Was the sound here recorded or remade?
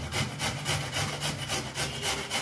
recorded